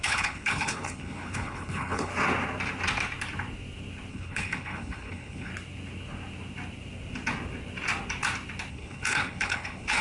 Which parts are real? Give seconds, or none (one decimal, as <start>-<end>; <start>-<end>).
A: 2.1-4.1; 5.5-8.7